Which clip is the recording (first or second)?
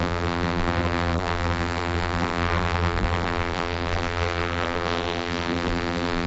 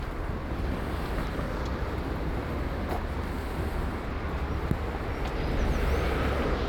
second